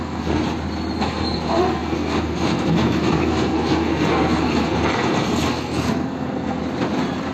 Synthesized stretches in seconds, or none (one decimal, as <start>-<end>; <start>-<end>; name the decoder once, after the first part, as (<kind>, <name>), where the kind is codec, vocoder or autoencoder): 0.0-0.4 (codec, SNAC); 1.0-6.6